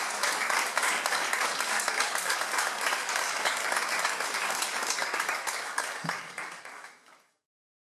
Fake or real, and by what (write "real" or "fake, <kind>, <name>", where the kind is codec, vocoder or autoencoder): fake, codec, DAC